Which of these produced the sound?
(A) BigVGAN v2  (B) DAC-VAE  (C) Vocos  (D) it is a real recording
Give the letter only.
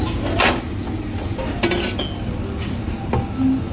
D